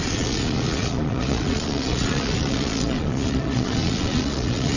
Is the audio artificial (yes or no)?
yes